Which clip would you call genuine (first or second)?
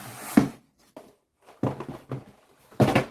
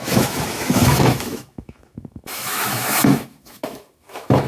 first